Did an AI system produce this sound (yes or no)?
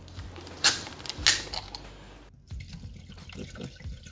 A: no